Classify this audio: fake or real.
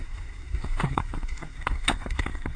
fake